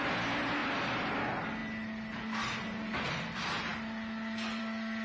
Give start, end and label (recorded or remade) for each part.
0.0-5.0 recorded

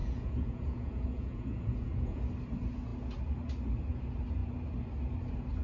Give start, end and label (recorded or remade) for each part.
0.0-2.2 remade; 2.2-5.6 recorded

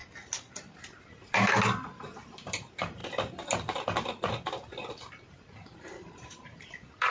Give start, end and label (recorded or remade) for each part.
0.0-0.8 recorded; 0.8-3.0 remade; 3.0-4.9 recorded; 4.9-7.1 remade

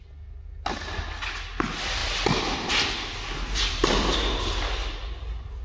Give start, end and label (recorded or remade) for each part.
0.0-5.6 recorded